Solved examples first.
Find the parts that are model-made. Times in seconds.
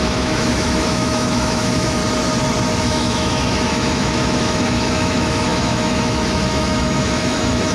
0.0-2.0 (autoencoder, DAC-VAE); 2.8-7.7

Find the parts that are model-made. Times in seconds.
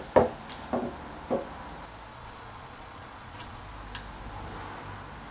2.1-3.6 (vocoder, Vocos)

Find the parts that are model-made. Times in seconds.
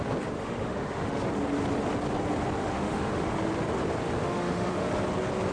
0.4-1.2 (autoencoder, DAC-VAE); 2.6-3.5; 4.2-4.9